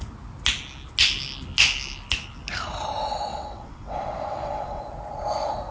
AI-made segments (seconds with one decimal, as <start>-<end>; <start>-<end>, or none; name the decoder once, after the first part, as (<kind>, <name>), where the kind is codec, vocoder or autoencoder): 3.3-4.8 (vocoder, WaveNeXt)